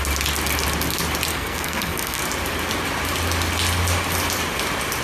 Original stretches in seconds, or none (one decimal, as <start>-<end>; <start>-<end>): 0.0-1.3; 2.2-5.0